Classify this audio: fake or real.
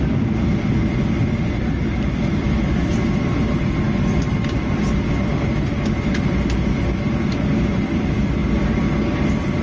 real